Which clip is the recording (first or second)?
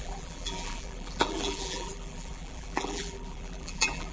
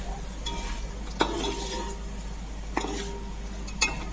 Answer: second